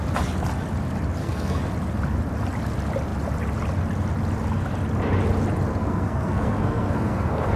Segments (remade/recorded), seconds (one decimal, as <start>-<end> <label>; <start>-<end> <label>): 0.0-1.2 recorded; 1.2-1.7 remade; 1.7-5.7 recorded; 5.7-7.6 remade